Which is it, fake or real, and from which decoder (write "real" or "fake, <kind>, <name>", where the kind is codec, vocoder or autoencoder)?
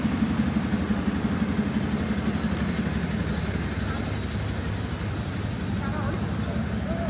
real